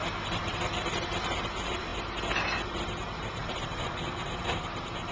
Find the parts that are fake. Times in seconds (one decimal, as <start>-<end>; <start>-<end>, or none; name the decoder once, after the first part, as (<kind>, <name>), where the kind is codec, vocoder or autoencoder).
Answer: 0.0-1.9 (vocoder, BigVGAN v2); 2.6-5.1